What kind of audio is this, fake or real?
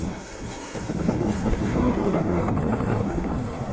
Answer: fake